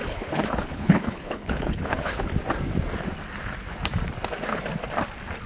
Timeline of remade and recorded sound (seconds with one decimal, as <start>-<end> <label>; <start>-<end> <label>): 0.0-2.3 remade; 2.3-5.5 recorded